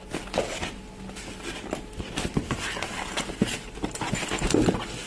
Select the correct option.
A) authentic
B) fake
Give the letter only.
A